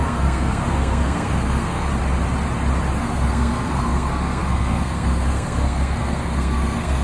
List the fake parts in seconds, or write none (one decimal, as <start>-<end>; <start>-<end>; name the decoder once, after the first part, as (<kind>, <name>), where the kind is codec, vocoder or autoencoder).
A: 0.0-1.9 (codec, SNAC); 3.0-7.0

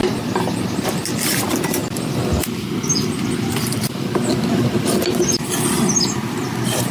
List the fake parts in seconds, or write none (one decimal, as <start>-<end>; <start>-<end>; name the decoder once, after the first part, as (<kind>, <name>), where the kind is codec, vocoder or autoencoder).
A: none

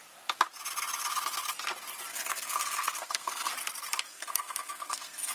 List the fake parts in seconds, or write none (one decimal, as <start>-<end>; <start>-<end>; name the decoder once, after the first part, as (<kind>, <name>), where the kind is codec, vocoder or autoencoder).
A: 2.1-3.5 (codec, SNAC); 4.1-5.3

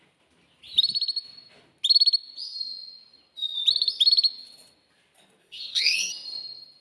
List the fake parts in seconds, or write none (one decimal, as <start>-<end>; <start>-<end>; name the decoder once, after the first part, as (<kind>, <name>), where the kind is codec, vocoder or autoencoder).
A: 5.4-6.1 (codec, SNAC)

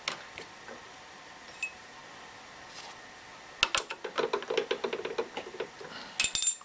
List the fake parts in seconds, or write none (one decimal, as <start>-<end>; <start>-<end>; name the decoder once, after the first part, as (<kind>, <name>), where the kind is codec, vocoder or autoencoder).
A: none

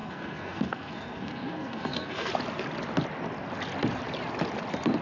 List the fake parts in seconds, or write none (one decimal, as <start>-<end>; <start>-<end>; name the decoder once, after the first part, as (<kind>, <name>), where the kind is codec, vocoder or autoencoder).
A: 0.0-2.3 (codec, SNAC)

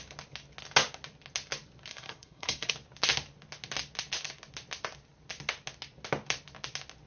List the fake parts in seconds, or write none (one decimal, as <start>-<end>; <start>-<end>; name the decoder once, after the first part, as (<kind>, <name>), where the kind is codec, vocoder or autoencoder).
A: 1.9-2.7 (codec, SNAC)